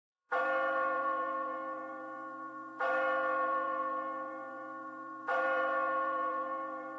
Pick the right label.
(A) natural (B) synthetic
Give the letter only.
B